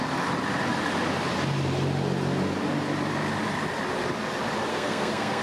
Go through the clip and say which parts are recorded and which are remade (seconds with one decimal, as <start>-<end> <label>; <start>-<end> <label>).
0.0-4.7 recorded; 4.7-5.4 remade